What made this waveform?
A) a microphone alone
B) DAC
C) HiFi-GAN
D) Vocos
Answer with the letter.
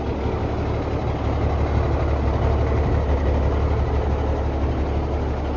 A